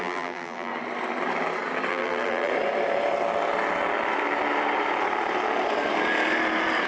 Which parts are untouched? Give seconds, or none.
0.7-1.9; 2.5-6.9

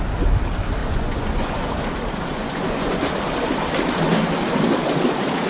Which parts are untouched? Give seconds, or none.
0.0-0.8; 1.7-2.3; 3.0-5.5

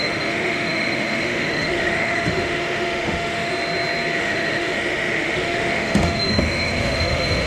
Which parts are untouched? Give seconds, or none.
3.5-4.2

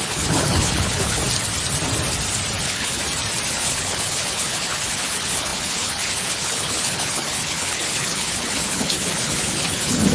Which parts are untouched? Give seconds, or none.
1.2-2.6; 3.0-3.5

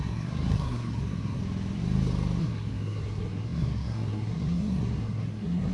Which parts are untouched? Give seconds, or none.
1.4-2.4

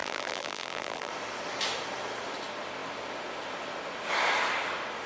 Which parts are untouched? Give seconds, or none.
1.1-5.1

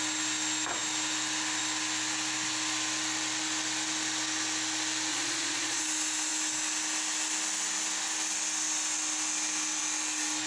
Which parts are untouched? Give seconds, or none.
0.0-5.1; 5.8-10.5